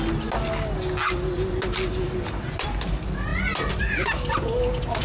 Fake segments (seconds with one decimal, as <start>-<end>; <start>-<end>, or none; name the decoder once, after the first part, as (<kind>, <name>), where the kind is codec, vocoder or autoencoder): none